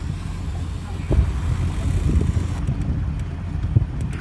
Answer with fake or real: real